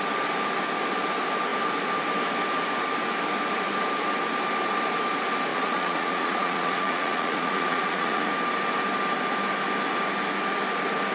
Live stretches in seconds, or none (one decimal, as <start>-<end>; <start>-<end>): 0.0-5.5; 8.3-11.1